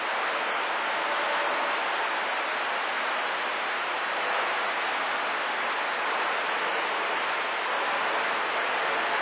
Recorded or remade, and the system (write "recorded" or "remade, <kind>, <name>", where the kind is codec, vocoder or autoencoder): recorded